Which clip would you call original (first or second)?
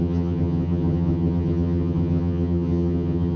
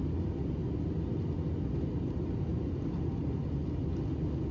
second